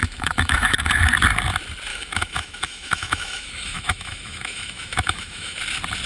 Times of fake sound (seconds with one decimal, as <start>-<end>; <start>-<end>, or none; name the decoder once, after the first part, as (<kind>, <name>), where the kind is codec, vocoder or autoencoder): 0.0-1.0 (autoencoder, DAC-VAE); 1.9-5.6